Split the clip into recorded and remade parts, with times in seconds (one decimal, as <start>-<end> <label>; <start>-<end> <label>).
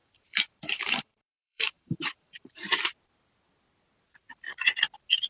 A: 0.0-2.8 remade; 2.8-5.3 recorded